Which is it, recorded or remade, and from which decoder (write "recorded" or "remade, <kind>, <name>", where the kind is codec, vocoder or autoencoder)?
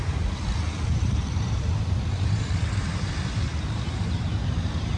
remade, vocoder, BigVGAN v2